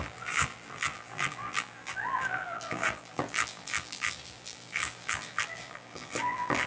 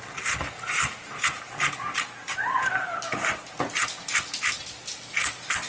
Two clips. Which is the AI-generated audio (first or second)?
first